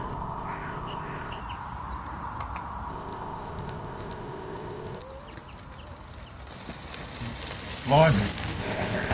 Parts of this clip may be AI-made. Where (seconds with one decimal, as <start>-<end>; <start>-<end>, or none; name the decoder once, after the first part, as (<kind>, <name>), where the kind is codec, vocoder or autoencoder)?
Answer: 0.0-1.4 (codec, ZipCodec); 2.9-5.0; 8.6-9.1